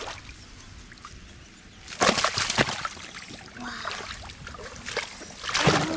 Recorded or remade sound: recorded